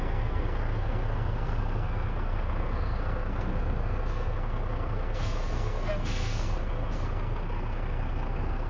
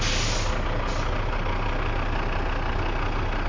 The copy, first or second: first